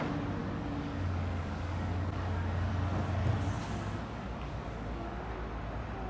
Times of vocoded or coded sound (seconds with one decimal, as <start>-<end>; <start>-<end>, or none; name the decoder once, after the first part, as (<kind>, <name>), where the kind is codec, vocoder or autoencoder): 0.4-2.7 (codec, DAC); 3.6-5.2